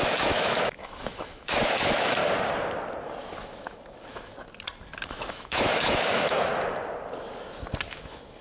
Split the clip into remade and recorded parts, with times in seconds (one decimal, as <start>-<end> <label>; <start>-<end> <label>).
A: 0.0-2.2 remade; 2.2-3.2 recorded; 3.2-4.3 remade; 4.3-5.1 recorded; 5.1-6.5 remade; 6.5-7.9 recorded; 7.9-8.4 remade